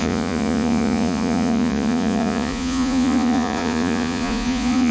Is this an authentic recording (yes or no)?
no